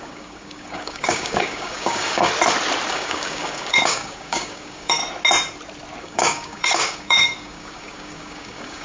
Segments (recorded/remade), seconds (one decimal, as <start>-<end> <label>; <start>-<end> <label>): 0.0-2.3 remade; 2.3-2.9 recorded; 2.9-5.0 remade; 5.0-6.0 recorded; 6.0-8.8 remade